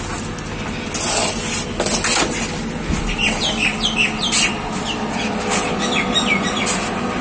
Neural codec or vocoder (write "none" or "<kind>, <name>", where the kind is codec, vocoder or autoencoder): none